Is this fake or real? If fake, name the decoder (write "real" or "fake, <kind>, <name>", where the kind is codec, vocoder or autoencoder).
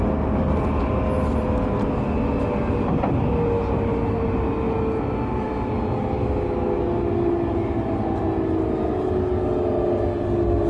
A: real